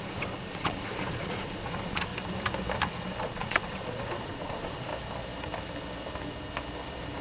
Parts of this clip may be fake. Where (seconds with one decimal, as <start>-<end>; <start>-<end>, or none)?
0.0-2.1; 3.2-4.9